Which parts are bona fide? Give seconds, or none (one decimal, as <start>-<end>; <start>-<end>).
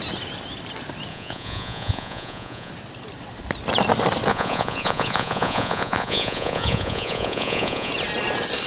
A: 0.0-1.1; 2.7-4.3; 7.9-8.7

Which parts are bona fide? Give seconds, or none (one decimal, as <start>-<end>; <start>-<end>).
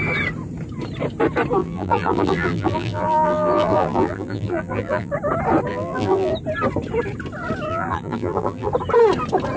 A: 0.0-1.6; 5.1-5.7; 6.3-7.7; 8.7-9.6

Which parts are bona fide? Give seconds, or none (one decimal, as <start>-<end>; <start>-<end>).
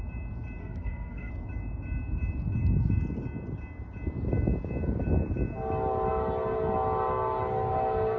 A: 0.0-0.6; 1.3-8.2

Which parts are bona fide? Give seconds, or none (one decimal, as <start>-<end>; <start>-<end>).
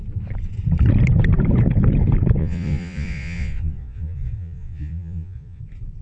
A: 0.0-2.4; 5.6-6.0